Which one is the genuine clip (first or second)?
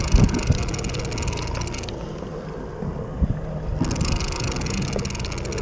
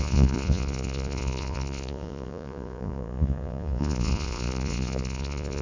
first